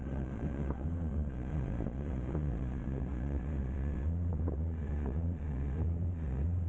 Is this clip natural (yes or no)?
no